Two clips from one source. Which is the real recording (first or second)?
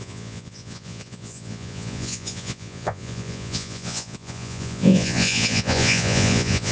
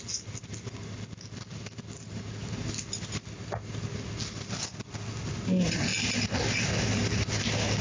second